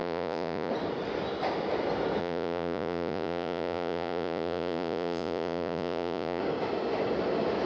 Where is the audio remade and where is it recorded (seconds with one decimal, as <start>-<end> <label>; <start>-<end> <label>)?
0.0-0.7 remade; 0.7-2.2 recorded; 2.2-6.4 remade; 6.4-7.7 recorded